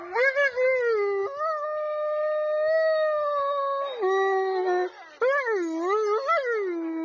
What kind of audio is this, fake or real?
real